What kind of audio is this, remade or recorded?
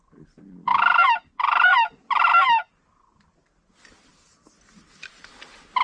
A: recorded